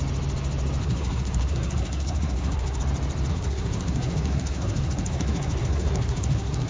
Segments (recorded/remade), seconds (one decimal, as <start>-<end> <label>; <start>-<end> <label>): 0.0-0.8 recorded; 0.8-2.8 remade; 2.8-3.3 recorded; 3.3-6.7 remade